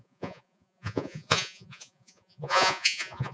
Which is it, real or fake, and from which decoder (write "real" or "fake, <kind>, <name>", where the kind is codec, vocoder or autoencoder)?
fake, vocoder, Vocos